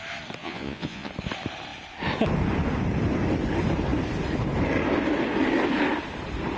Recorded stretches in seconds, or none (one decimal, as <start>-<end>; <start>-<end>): 0.0-0.4; 1.1-6.6